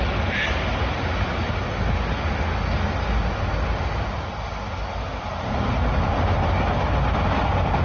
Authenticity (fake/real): real